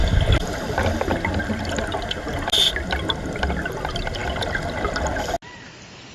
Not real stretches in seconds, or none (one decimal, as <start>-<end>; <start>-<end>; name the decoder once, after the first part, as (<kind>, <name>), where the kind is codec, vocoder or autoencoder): none